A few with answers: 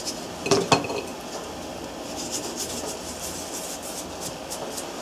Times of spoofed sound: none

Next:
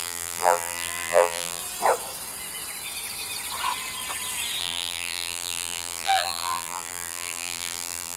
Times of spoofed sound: 0.0-1.6 (vocoder, BigVGAN v2); 4.6-8.2

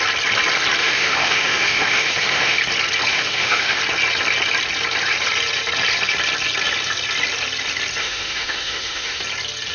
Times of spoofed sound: 0.8-2.6 (autoencoder, DAC-VAE); 3.1-3.8; 8.0-9.2

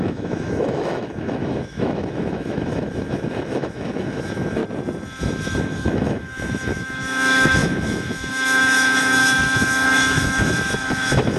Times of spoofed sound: 0.0-4.6 (autoencoder, DAC-VAE); 5.2-11.4

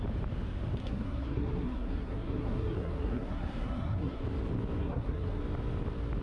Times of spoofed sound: 0.8-4.2 (codec, SNAC); 4.8-5.4

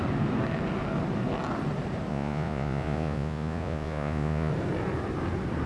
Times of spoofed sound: 2.1-4.5 (vocoder, Vocos)

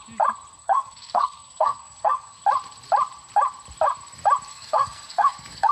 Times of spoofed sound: 0.6-2.4 (codec, SNAC); 4.5-5.7